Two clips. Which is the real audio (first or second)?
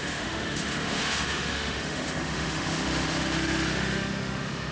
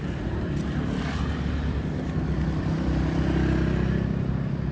second